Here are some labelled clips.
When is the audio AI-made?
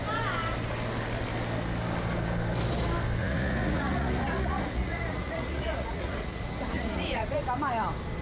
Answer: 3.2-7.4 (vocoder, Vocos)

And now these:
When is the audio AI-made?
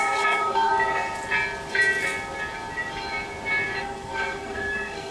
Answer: 0.0-0.7 (codec, SNAC); 3.8-5.1